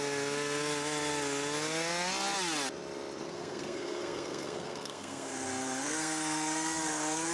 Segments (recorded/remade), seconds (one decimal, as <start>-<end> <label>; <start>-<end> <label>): 0.0-3.2 recorded; 3.2-7.3 remade